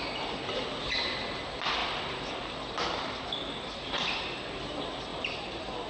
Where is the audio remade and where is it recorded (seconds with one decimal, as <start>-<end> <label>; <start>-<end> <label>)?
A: 0.0-1.8 recorded; 1.8-4.5 remade; 4.5-5.1 recorded; 5.1-5.9 remade